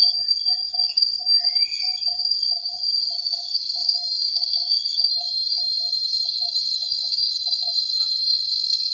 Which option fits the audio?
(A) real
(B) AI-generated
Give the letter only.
B